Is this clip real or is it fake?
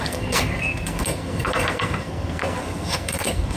fake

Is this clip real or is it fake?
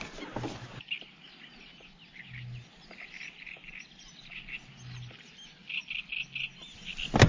real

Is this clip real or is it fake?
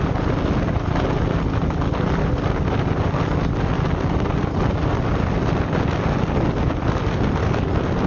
real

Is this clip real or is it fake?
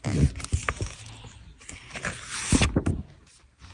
real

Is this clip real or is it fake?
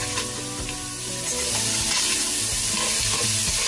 real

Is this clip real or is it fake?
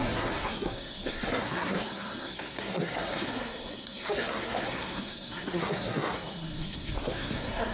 fake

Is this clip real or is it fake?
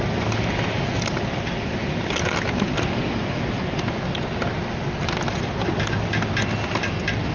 real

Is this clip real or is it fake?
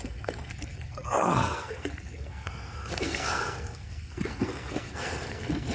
fake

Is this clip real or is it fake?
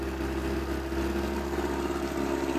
real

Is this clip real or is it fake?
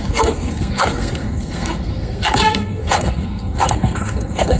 fake